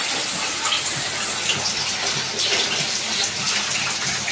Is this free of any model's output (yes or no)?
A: yes